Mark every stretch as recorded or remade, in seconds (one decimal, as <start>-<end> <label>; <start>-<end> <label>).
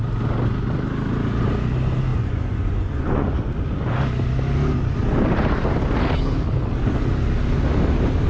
0.0-2.1 recorded; 2.1-3.3 remade; 3.3-8.3 recorded